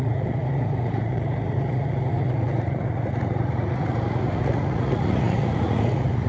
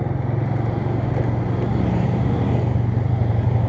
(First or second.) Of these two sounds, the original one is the second